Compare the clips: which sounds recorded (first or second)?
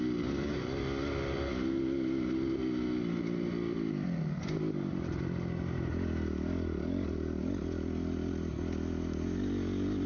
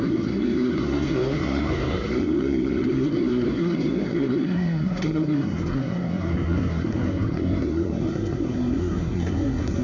first